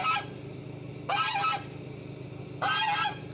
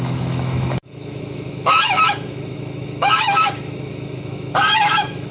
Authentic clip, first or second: first